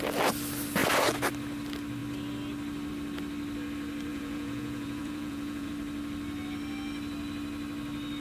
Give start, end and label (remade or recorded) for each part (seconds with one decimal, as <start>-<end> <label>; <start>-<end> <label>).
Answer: 0.0-4.1 recorded; 4.1-5.7 remade; 5.7-8.2 recorded